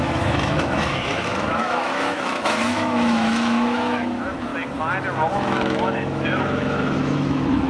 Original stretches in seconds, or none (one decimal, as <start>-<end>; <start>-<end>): 4.5-5.3

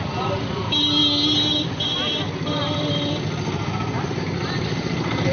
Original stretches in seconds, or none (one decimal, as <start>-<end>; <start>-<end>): 0.0-5.3

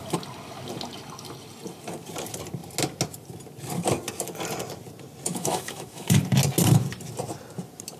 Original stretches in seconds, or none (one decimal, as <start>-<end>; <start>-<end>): 0.0-5.3; 6.2-8.0

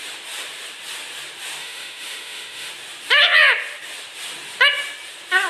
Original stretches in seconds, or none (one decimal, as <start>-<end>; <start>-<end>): 0.0-1.6; 2.7-5.5

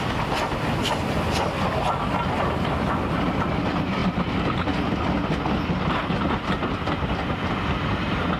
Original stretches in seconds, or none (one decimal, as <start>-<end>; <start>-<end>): 0.0-8.4

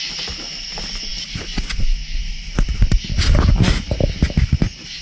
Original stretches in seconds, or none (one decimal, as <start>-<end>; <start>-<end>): 0.0-5.0

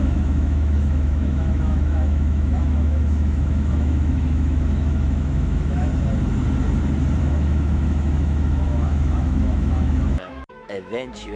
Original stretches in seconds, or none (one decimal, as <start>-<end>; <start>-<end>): 5.9-7.2